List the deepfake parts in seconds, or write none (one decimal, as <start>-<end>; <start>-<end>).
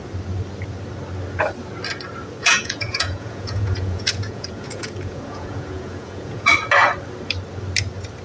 2.4-6.5